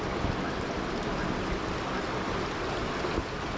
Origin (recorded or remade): recorded